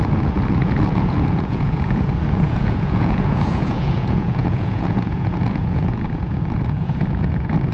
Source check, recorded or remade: remade